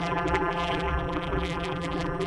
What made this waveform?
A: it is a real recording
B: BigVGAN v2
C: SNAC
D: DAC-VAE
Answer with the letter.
B